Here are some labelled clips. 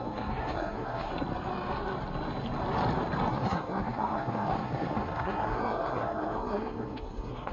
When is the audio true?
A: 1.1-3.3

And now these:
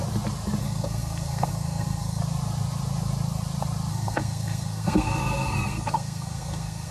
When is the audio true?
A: 0.0-0.6; 2.2-3.9

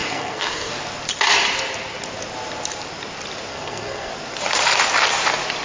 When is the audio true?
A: 0.7-3.5; 4.1-5.6

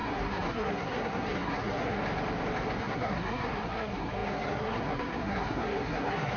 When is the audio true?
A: 2.0-2.8

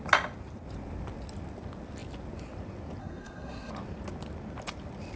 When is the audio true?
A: 0.0-3.0; 3.7-5.2